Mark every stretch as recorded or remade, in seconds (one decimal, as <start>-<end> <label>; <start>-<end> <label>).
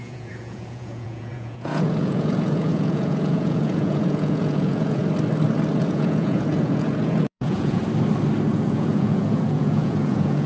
0.0-5.0 remade; 5.0-5.8 recorded; 5.8-7.8 remade; 7.8-8.5 recorded; 8.5-10.5 remade